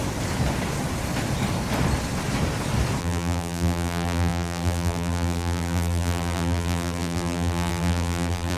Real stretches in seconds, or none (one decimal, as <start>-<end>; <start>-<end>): 0.0-3.0